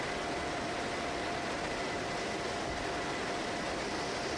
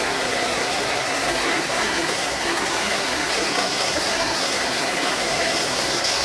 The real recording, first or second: first